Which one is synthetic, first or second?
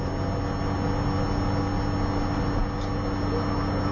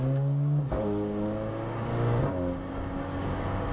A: second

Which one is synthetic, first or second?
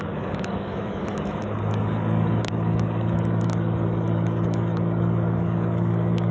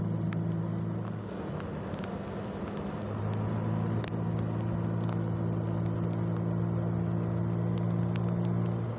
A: first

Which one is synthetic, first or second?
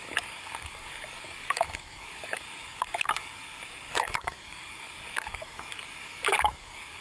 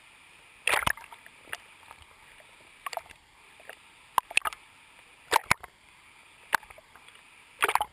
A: first